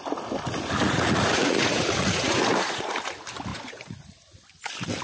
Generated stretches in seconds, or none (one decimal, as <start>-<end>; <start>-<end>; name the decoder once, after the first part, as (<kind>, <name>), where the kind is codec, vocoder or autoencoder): 0.8-2.9 (vocoder, Vocos); 3.5-4.1